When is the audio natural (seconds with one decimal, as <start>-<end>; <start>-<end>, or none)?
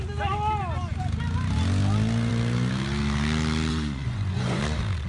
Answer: 0.0-3.7; 4.6-5.1